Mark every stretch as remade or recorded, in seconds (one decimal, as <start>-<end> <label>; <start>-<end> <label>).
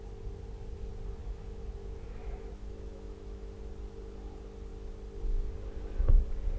0.0-1.2 recorded; 1.2-3.7 remade; 3.7-6.6 recorded